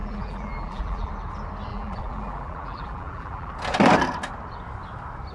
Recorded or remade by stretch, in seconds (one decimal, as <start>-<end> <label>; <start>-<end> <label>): 0.0-1.1 remade; 1.1-1.7 recorded; 1.7-3.5 remade; 3.5-5.3 recorded